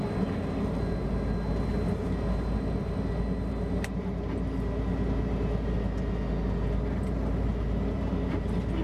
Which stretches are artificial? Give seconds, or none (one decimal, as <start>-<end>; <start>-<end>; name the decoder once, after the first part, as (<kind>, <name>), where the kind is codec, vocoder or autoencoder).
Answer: none